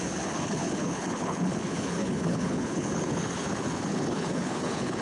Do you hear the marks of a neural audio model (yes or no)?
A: yes